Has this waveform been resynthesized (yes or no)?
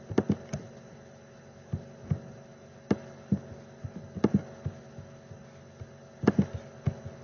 no